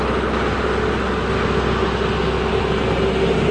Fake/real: real